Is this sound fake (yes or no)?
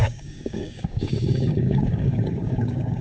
yes